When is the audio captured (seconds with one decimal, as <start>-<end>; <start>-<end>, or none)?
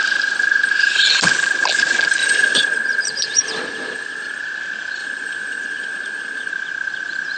0.0-2.2; 4.4-5.0; 6.5-7.4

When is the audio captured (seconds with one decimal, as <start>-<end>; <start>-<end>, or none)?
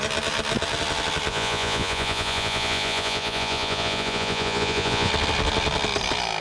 0.0-1.3; 5.1-6.4